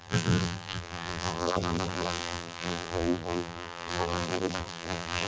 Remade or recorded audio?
remade